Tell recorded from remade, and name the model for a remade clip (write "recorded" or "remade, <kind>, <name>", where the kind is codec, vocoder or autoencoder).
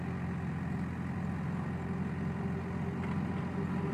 recorded